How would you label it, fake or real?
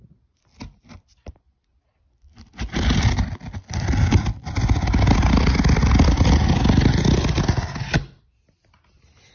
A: real